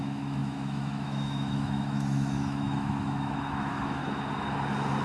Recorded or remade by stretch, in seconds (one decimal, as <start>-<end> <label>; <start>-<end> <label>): 0.0-4.0 remade; 4.0-5.0 recorded